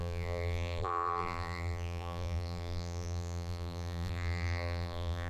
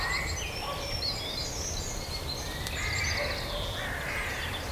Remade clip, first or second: first